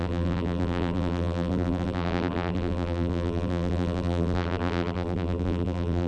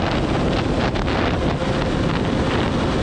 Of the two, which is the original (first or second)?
second